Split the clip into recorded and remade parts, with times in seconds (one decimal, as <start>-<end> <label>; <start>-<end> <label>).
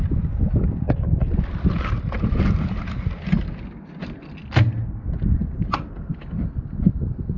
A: 0.0-7.4 recorded